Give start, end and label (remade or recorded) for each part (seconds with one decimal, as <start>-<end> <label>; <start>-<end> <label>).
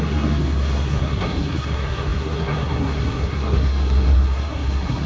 0.0-5.1 remade